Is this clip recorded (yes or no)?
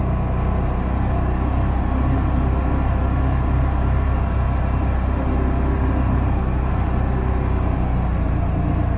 yes